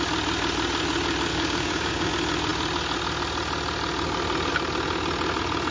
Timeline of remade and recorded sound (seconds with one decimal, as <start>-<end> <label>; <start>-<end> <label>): 0.0-1.3 recorded; 1.3-2.1 remade; 2.1-5.7 recorded